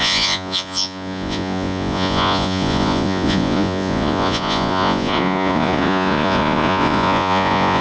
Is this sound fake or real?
fake